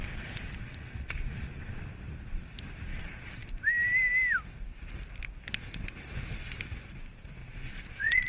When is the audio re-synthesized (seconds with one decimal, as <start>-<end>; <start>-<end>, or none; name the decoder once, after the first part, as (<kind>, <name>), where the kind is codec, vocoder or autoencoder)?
0.0-1.8 (vocoder, Vocos); 2.9-3.5; 7.4-8.3